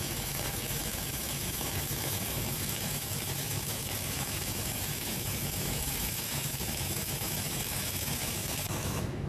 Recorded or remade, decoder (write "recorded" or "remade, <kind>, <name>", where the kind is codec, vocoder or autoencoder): remade, autoencoder, DAC-VAE